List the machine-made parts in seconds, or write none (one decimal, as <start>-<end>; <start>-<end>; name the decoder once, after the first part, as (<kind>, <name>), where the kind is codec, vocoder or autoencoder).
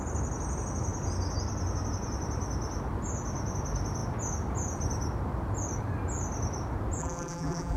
7.0-7.8 (vocoder, BigVGAN v2)